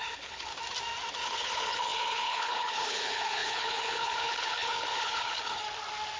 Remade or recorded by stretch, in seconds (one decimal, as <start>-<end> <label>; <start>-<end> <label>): 0.0-0.5 remade; 0.5-1.1 recorded; 1.1-5.6 remade; 5.6-6.2 recorded